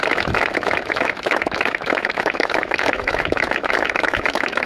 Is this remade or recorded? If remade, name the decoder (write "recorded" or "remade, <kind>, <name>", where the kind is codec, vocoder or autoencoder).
remade, autoencoder, DAC-VAE